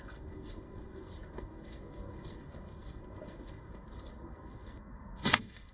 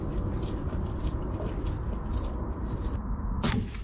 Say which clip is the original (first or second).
second